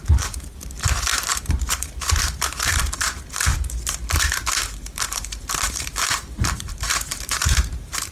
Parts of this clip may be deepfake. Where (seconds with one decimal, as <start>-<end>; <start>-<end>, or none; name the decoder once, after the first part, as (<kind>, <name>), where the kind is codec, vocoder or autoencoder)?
0.0-8.1 (vocoder, BigVGAN v2)